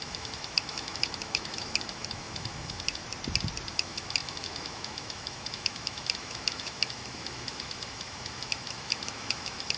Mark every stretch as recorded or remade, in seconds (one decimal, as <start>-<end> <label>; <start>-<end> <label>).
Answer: 0.0-3.0 remade; 3.0-3.7 recorded; 3.7-9.8 remade